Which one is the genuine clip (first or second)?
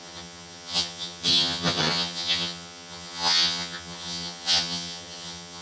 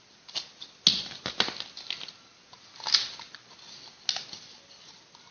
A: second